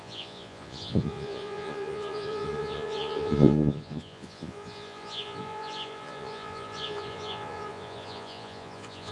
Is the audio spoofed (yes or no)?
yes